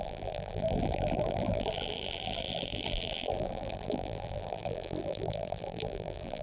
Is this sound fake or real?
fake